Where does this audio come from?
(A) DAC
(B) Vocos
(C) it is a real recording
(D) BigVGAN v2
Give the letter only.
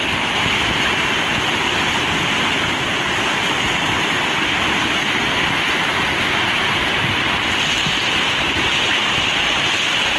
D